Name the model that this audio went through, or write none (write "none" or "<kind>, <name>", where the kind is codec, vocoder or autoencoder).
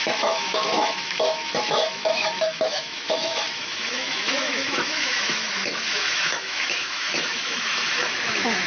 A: autoencoder, DAC-VAE